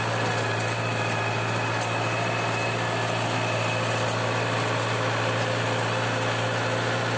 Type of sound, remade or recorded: recorded